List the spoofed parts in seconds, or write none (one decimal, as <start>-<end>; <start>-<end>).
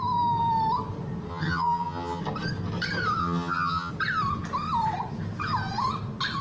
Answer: 1.3-2.2; 3.2-3.9